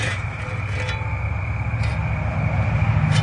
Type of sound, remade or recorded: recorded